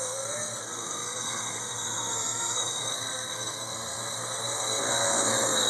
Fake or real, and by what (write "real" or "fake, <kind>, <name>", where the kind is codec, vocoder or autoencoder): fake, codec, SNAC